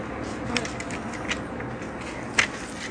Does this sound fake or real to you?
real